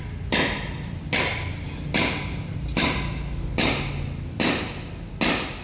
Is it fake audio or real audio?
real